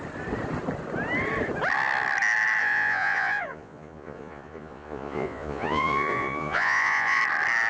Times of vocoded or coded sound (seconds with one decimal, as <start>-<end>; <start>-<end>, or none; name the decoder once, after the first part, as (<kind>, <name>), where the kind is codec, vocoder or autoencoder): 2.6-7.2 (vocoder, Vocos)